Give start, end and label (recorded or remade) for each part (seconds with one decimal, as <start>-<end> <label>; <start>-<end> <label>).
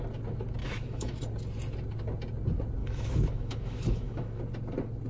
0.0-0.6 recorded; 0.6-1.2 remade; 1.2-2.8 recorded; 2.8-4.4 remade; 4.4-5.1 recorded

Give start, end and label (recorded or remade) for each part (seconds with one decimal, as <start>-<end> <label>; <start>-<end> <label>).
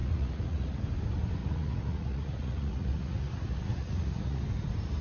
0.0-0.8 remade; 0.8-1.4 recorded; 1.4-4.4 remade; 4.4-5.0 recorded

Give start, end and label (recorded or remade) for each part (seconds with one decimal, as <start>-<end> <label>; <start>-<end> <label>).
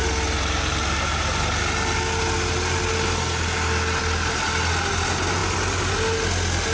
0.0-6.7 recorded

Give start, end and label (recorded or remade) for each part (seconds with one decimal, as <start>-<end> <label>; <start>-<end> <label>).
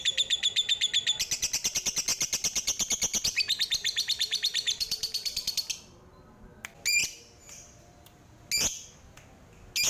0.0-3.8 recorded; 3.8-5.5 remade; 5.5-7.0 recorded; 7.0-8.4 remade; 8.4-9.9 recorded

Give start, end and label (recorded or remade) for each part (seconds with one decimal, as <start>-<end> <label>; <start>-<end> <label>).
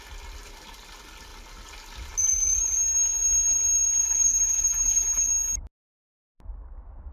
0.0-4.0 recorded; 4.0-5.3 remade; 5.3-7.1 recorded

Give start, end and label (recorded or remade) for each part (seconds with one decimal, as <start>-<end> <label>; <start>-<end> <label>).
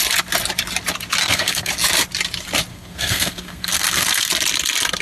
0.0-1.2 recorded; 1.2-1.7 remade; 1.7-2.7 recorded; 2.7-4.3 remade; 4.3-5.0 recorded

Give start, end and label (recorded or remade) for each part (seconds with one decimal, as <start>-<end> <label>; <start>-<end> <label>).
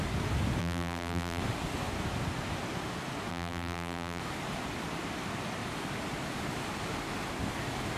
0.0-0.6 recorded; 0.6-1.4 remade; 1.4-3.3 recorded; 3.3-4.2 remade; 4.2-8.0 recorded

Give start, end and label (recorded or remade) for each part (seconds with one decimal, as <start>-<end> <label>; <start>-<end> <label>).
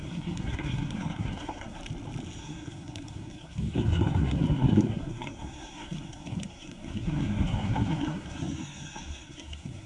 0.0-1.8 remade; 1.8-2.4 recorded; 2.4-9.9 remade